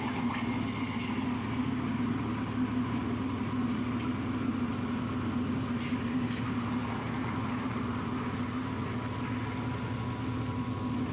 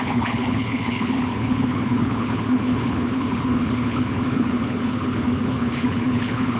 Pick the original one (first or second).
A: first